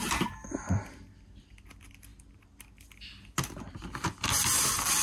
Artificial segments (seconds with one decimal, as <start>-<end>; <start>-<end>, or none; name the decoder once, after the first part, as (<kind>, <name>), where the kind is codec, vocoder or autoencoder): none